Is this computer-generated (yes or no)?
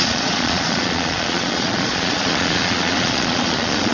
yes